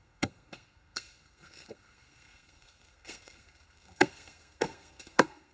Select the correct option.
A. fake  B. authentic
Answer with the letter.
A